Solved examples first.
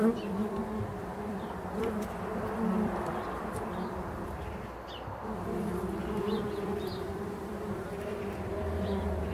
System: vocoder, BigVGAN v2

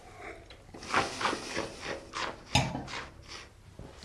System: none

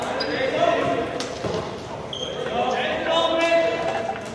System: none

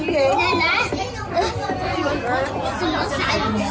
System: vocoder, BigVGAN v2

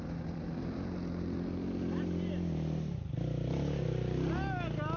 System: none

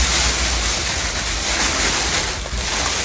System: none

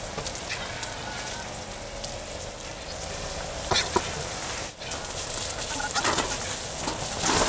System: none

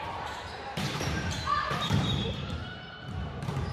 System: vocoder, BigVGAN v2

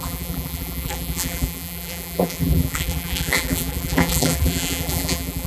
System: vocoder, BigVGAN v2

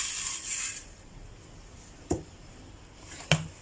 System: none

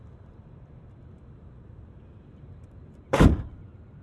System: vocoder, BigVGAN v2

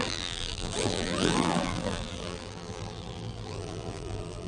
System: vocoder, BigVGAN v2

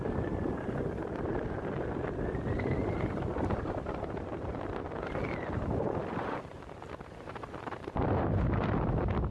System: vocoder, BigVGAN v2